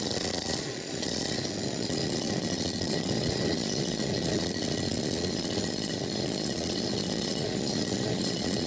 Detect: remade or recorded remade